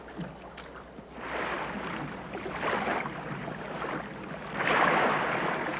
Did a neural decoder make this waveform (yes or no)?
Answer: no